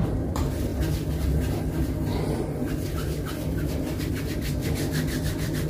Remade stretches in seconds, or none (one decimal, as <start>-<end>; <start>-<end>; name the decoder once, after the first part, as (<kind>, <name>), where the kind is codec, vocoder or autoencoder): 0.0-5.7 (vocoder, BigVGAN v2)